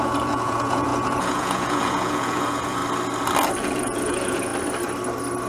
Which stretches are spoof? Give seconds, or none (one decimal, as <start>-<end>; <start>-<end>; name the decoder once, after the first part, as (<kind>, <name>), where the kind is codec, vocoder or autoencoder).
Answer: 0.0-2.8 (vocoder, Vocos); 3.6-4.5